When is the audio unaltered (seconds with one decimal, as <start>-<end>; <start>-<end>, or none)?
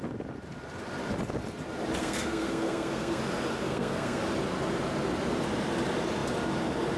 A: 0.0-2.0; 3.2-3.6; 4.2-7.0